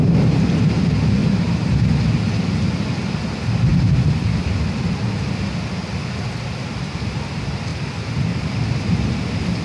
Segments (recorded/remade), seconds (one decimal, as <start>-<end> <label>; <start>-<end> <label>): 0.0-1.2 recorded; 1.2-2.0 remade; 2.0-7.7 recorded; 7.7-8.4 remade; 8.4-9.6 recorded